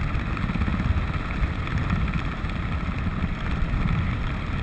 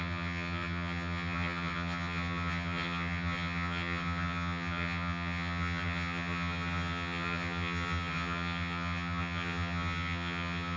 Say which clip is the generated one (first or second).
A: second